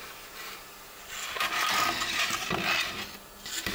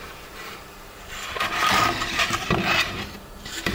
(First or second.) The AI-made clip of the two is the second